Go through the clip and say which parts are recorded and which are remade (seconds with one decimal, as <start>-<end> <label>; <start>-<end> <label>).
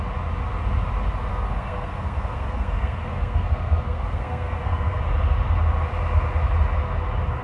0.0-1.3 recorded; 1.3-5.0 remade; 5.0-7.4 recorded